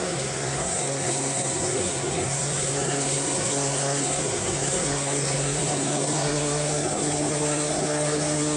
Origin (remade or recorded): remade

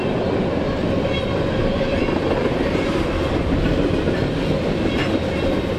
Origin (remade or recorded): recorded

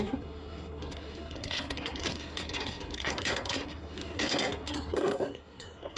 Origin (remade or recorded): remade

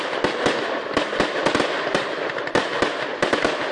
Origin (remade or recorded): recorded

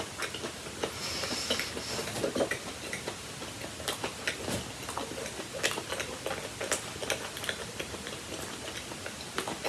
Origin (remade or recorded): recorded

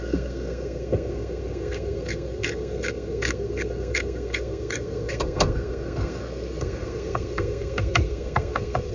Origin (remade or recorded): remade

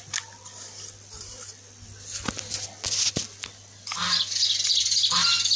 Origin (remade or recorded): recorded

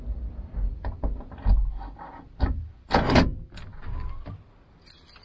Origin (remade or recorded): recorded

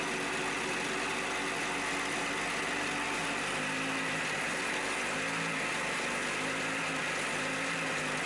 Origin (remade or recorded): recorded